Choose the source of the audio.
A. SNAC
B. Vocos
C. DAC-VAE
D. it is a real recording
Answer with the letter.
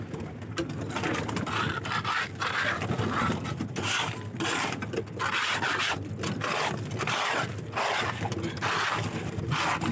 D